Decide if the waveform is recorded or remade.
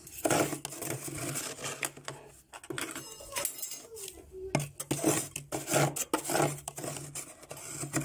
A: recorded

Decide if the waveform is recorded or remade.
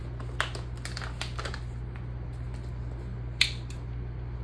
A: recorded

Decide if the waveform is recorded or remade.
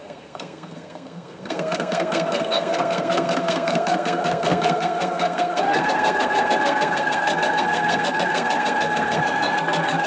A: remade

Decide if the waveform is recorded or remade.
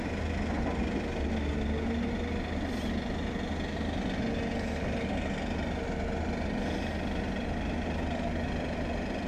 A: recorded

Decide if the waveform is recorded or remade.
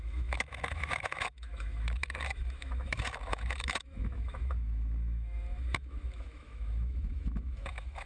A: remade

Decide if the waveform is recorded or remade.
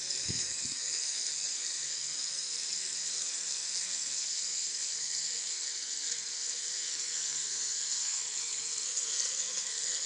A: remade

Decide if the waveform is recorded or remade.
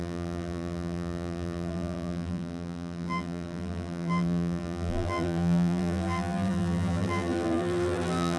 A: remade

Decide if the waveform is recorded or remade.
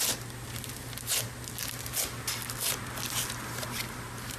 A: recorded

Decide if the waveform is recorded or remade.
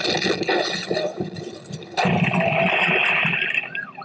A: recorded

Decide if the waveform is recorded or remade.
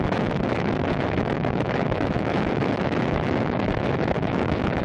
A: remade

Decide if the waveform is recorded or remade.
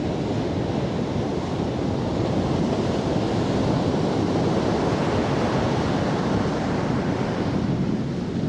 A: recorded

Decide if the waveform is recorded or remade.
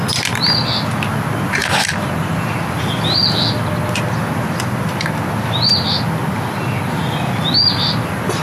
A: recorded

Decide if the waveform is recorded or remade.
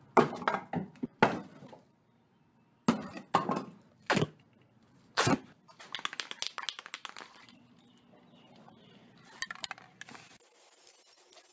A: recorded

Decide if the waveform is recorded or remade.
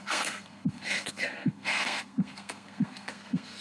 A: remade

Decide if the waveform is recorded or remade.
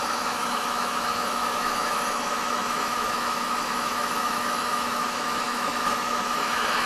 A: remade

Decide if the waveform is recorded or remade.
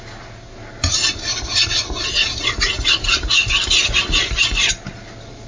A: recorded